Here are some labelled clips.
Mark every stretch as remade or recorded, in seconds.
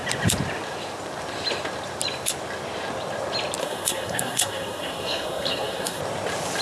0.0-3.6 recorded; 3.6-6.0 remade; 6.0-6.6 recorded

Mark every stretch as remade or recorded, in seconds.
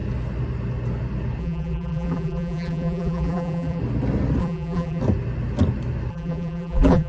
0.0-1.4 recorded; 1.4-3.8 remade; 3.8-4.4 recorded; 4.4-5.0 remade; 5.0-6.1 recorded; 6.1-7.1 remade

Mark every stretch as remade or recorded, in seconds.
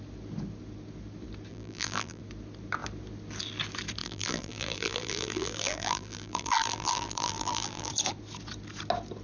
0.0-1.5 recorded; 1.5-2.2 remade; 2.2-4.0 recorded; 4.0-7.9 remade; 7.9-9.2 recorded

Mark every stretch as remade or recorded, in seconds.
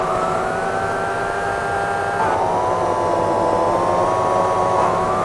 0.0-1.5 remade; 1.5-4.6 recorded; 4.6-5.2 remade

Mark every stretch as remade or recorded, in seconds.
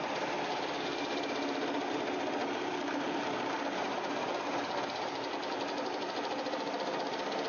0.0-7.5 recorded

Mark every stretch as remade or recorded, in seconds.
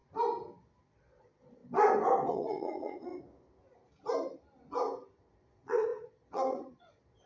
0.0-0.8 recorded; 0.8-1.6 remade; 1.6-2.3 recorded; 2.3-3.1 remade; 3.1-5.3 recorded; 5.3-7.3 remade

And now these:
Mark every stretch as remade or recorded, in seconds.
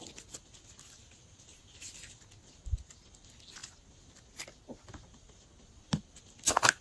0.0-6.8 recorded